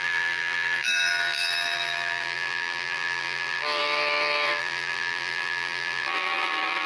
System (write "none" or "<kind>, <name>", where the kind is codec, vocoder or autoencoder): vocoder, BigVGAN v2